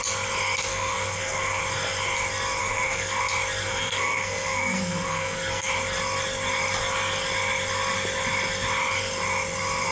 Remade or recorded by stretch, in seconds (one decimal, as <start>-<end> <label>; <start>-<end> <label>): 0.0-0.7 recorded; 0.7-1.6 remade; 1.6-2.6 recorded; 2.6-3.2 remade; 3.2-3.6 recorded; 3.6-5.7 remade; 5.7-9.9 recorded